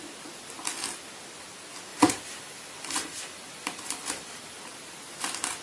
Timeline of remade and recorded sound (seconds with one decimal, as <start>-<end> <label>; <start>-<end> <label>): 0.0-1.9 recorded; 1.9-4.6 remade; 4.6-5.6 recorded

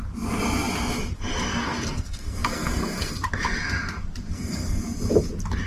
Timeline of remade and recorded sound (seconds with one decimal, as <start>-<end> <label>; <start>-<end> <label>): 0.0-1.5 recorded; 1.5-3.1 remade; 3.1-4.3 recorded; 4.3-4.8 remade; 4.8-5.7 recorded

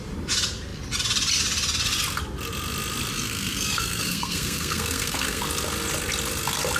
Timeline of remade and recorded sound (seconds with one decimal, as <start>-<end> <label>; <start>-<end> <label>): 0.0-3.1 recorded; 3.1-5.4 remade; 5.4-6.8 recorded